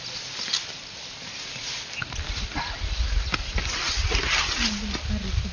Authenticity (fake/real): real